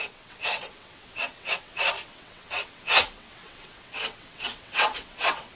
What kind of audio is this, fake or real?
fake